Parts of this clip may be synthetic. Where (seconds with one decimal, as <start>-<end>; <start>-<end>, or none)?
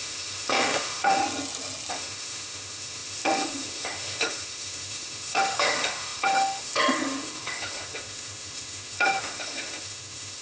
0.0-1.2; 1.9-10.4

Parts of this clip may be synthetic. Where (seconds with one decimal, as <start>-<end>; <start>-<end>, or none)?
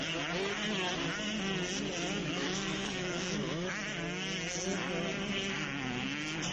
2.2-3.7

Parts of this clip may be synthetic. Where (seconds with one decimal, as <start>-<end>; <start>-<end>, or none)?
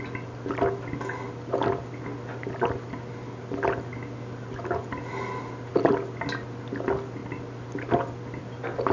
none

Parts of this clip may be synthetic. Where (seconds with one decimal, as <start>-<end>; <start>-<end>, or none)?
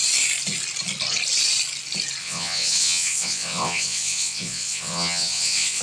2.2-5.8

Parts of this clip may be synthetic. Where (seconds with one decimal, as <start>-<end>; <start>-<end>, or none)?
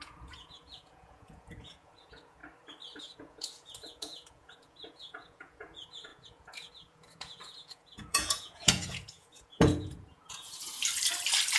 0.0-2.4; 3.0-10.7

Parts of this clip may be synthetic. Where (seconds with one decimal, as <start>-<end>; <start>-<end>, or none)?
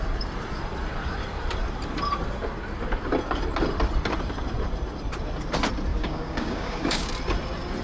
5.9-7.1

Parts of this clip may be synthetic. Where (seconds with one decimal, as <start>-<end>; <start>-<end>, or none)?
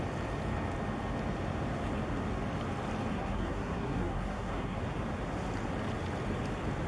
3.1-4.8